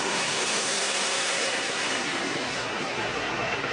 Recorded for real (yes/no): no